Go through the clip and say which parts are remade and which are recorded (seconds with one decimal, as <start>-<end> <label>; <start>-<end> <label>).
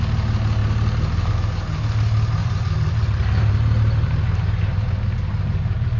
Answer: 0.0-2.4 recorded; 2.4-6.0 remade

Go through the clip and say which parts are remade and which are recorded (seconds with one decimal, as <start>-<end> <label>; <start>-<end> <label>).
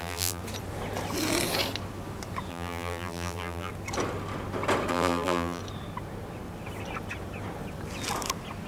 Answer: 0.0-0.4 remade; 0.4-2.5 recorded; 2.5-3.7 remade; 3.7-4.9 recorded; 4.9-5.6 remade; 5.6-8.7 recorded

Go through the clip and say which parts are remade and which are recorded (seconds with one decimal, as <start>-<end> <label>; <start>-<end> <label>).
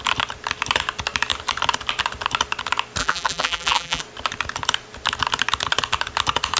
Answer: 0.0-3.0 recorded; 3.0-4.0 remade; 4.0-6.6 recorded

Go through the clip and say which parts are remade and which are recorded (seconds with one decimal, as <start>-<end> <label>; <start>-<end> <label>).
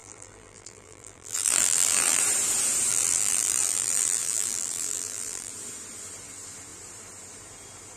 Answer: 0.0-2.2 remade; 2.2-2.9 recorded; 2.9-5.5 remade; 5.5-8.0 recorded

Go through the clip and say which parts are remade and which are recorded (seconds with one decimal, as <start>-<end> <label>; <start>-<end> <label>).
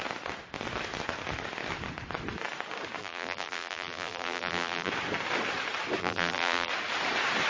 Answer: 0.0-3.0 recorded; 3.0-4.9 remade; 4.9-6.0 recorded; 6.0-6.7 remade; 6.7-7.5 recorded